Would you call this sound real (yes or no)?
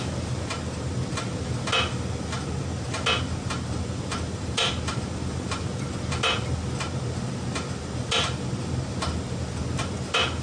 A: yes